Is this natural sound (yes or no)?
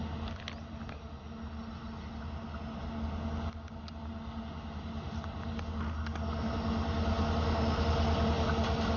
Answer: yes